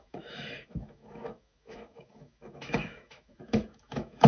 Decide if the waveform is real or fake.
fake